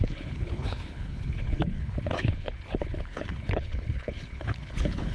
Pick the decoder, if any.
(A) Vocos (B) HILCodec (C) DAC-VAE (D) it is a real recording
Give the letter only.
B